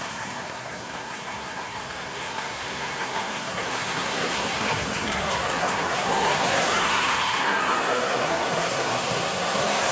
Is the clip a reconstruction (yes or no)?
yes